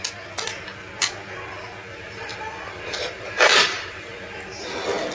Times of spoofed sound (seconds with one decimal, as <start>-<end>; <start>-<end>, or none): 1.9-4.3